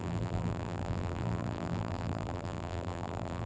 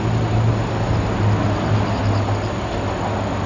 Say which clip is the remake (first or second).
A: first